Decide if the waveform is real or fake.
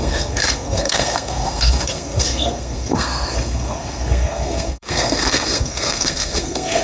fake